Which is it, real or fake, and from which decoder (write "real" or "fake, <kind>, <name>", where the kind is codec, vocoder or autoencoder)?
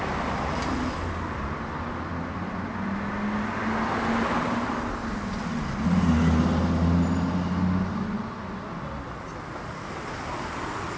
real